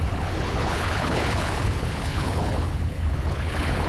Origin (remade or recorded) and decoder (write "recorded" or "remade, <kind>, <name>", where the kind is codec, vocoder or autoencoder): remade, codec, HILCodec